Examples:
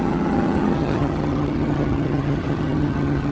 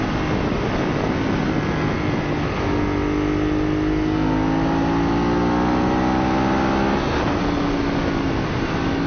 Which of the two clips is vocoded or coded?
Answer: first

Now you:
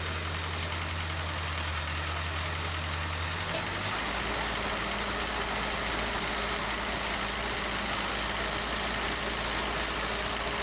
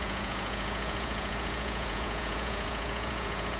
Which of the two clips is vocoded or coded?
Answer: second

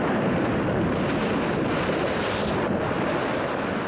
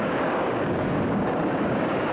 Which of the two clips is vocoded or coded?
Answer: second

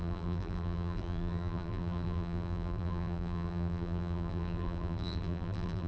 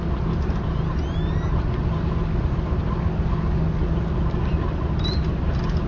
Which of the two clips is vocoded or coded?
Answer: first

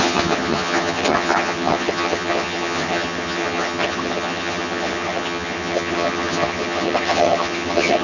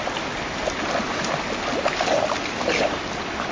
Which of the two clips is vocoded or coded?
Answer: first